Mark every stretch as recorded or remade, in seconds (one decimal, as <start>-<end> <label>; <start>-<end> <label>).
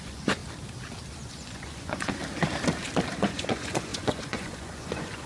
0.0-0.4 remade; 0.4-1.3 recorded; 1.3-2.2 remade; 2.2-3.1 recorded; 3.1-5.3 remade